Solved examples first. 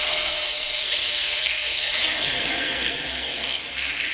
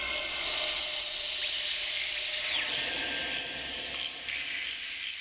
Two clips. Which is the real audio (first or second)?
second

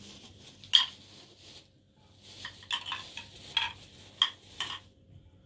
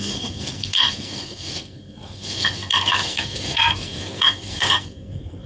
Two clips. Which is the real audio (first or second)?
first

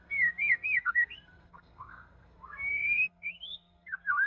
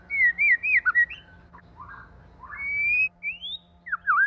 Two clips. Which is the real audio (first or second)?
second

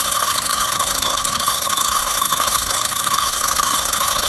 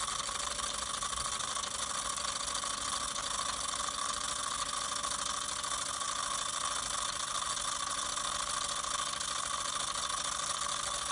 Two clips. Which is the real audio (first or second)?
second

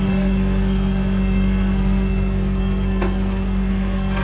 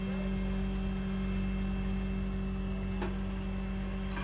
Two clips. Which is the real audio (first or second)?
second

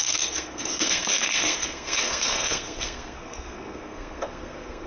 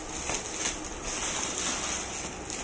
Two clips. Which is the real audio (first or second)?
second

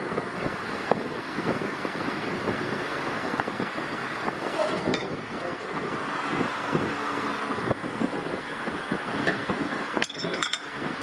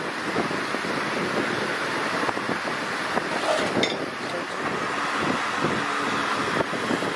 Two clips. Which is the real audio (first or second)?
second